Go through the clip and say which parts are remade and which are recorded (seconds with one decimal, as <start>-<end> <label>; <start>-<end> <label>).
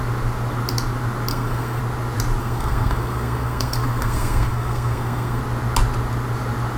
0.0-1.3 recorded; 1.3-1.8 remade; 1.8-2.4 recorded; 2.4-5.4 remade; 5.4-6.8 recorded